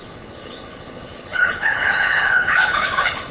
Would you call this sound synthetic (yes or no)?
yes